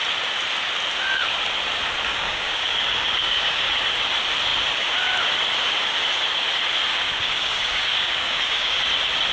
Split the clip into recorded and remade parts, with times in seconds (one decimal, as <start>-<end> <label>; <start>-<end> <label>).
0.0-2.1 recorded; 2.1-3.7 remade; 3.7-6.9 recorded; 6.9-8.8 remade; 8.8-9.3 recorded